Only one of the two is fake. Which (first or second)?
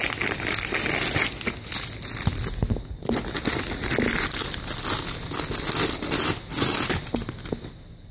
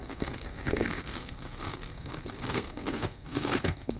second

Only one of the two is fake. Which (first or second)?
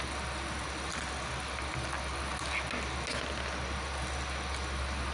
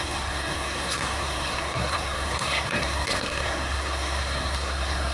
second